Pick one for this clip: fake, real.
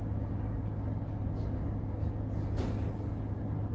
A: real